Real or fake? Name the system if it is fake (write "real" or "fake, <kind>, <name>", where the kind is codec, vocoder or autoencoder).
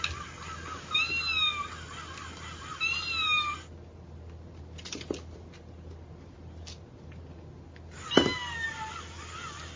real